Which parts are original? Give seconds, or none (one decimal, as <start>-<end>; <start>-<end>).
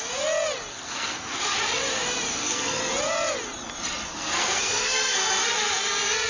0.0-0.7; 1.6-2.3; 2.8-4.1; 5.7-6.3